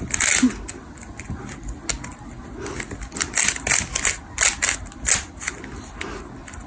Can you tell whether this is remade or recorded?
recorded